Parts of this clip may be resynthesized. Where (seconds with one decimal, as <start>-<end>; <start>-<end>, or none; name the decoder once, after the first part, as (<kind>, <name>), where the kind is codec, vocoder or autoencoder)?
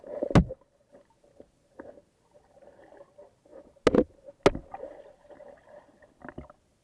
0.4-0.9 (vocoder, BigVGAN v2)